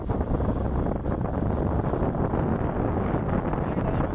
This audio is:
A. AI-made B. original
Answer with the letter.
B